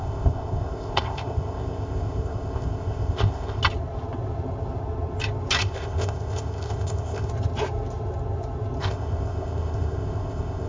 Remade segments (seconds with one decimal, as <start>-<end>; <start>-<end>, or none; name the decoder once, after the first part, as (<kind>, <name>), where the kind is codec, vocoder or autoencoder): 0.0-3.6 (codec, ZipCodec); 5.6-7.3; 8.8-10.7

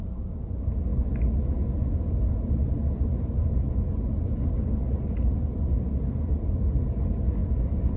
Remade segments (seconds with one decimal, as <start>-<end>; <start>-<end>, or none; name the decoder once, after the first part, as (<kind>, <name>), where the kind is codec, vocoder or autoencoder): none

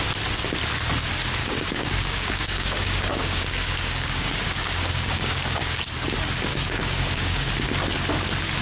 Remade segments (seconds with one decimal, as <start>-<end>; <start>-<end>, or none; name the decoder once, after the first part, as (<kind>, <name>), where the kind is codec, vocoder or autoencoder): 1.4-5.8 (codec, DAC); 6.5-7.5

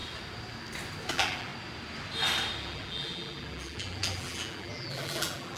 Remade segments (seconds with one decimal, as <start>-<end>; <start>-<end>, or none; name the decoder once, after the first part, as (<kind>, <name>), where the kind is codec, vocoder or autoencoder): 1.1-1.5 (vocoder, BigVGAN v2); 2.6-5.6

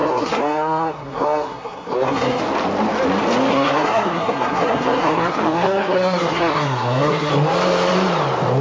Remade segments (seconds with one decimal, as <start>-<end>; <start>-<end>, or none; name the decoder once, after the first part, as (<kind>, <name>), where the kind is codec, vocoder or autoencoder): 0.0-2.4 (codec, SNAC); 3.5-7.3